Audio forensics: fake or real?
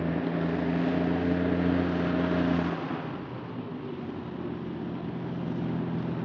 real